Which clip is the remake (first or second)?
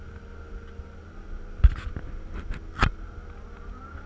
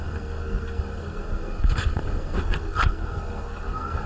second